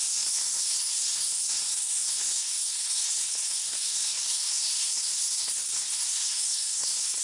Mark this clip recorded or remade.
remade